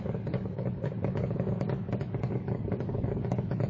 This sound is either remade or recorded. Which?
remade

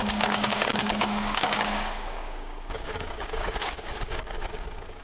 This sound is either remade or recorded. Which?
remade